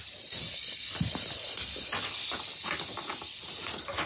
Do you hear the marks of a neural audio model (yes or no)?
no